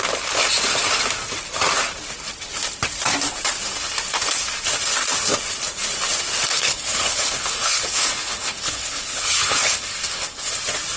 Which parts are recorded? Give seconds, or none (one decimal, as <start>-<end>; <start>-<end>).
0.0-6.5; 10.5-11.0